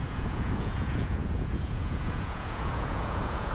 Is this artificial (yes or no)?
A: yes